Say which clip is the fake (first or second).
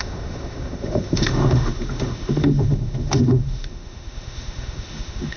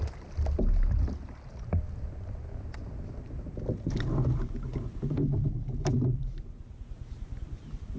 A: first